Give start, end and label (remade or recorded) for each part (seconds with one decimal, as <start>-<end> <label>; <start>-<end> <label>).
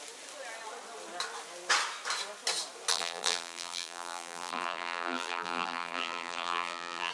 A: 0.0-2.9 recorded; 2.9-7.1 remade